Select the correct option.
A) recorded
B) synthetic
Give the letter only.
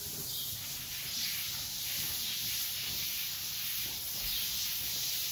A